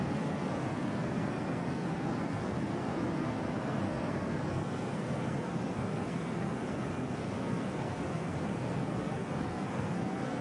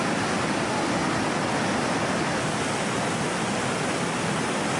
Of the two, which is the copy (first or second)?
first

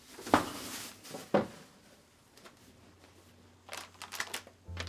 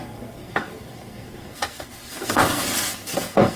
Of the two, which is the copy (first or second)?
second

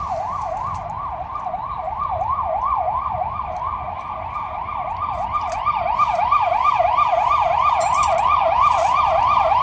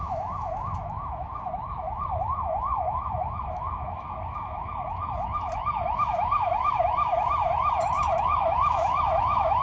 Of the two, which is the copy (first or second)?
second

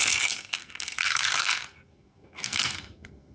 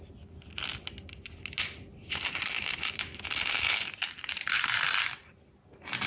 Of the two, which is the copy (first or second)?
first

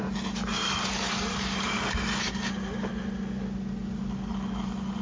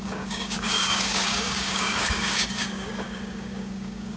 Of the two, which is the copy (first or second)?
second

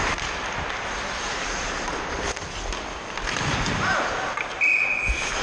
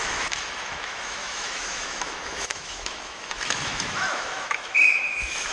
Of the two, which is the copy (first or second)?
second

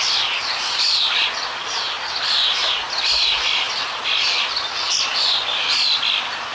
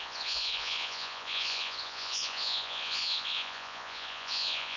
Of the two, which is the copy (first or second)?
second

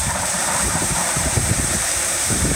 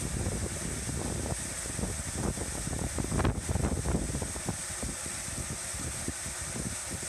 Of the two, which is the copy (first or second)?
first